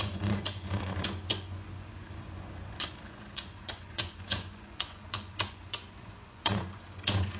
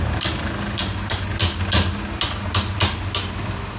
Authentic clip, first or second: second